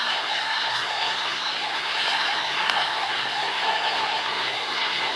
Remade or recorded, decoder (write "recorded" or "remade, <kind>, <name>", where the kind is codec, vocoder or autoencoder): remade, codec, SNAC